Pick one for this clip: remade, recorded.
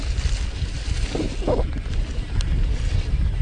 recorded